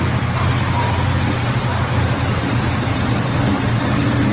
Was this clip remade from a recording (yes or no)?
no